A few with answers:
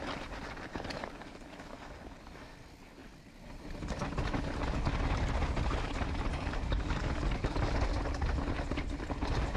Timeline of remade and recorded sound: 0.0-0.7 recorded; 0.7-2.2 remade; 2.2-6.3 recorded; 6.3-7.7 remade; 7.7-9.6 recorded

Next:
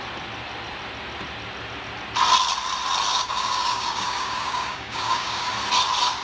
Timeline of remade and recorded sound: 0.0-3.1 recorded; 3.1-5.5 remade; 5.5-6.2 recorded

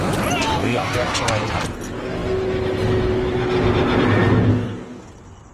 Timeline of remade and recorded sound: 0.0-0.6 recorded; 0.6-1.3 remade; 1.3-4.5 recorded; 4.5-5.1 remade; 5.1-5.5 recorded

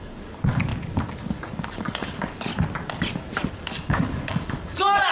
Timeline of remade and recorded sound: 0.0-0.7 remade; 0.7-1.2 recorded; 1.2-2.5 remade; 2.5-3.5 recorded; 3.5-5.1 remade

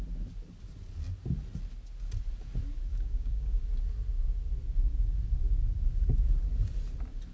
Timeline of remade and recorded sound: 0.0-2.9 recorded; 2.9-3.6 remade; 3.6-7.3 recorded

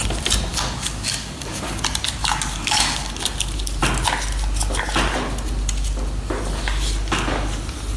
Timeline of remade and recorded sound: 0.0-0.5 recorded; 0.5-1.8 remade; 1.8-2.2 recorded; 2.2-3.1 remade; 3.1-8.0 recorded